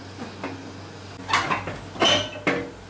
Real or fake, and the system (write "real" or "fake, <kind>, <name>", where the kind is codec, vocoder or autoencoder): real